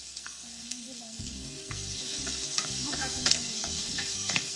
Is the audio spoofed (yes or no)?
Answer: yes